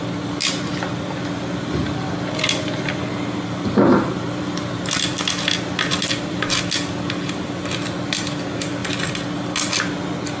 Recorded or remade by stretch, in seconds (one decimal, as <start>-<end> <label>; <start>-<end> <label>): 0.0-10.4 recorded